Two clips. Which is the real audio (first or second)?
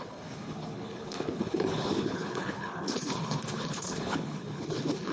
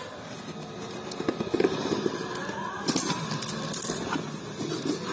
second